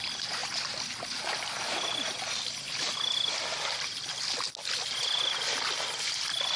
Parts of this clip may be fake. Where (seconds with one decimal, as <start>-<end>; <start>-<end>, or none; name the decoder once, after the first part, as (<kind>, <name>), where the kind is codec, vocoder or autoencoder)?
none